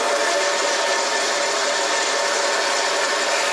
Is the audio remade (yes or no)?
no